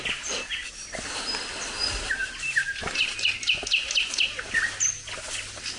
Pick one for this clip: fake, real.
real